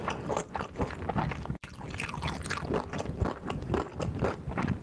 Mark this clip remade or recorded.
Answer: recorded